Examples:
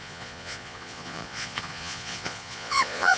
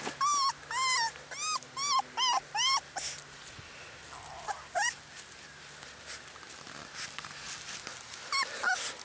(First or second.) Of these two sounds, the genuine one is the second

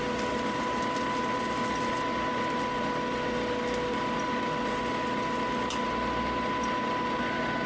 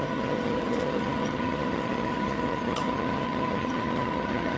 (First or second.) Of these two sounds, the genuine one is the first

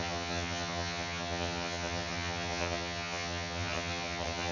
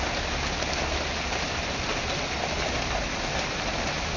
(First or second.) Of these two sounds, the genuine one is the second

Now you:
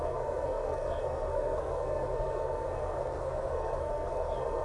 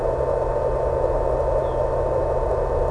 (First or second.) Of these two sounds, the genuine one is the second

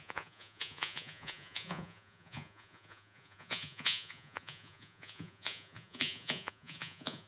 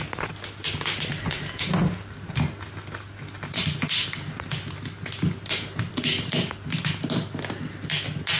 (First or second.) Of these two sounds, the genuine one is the second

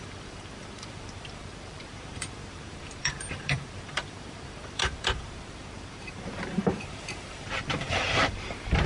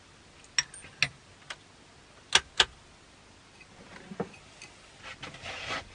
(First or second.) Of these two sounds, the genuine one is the second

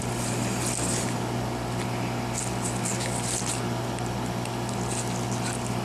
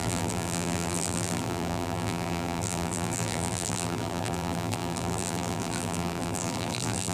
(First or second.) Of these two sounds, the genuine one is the first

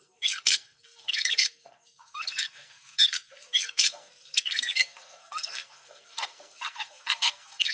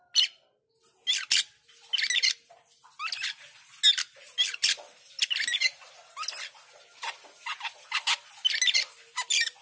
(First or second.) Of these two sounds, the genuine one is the second